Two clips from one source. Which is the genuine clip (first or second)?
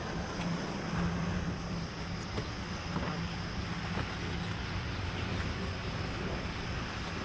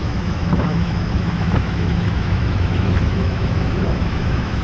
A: first